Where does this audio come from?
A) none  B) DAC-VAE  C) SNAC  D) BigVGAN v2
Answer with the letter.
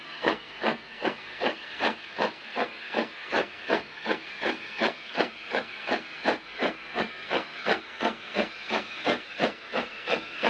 C